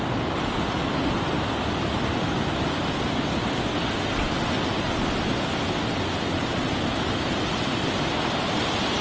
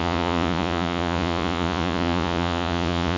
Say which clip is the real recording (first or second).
first